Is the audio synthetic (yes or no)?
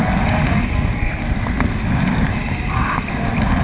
no